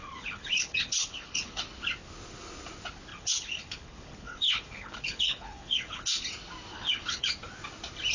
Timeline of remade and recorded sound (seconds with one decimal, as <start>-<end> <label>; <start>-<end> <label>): 0.0-1.6 remade; 1.6-3.1 recorded; 3.1-6.0 remade; 6.0-6.7 recorded; 6.7-7.3 remade; 7.3-8.1 recorded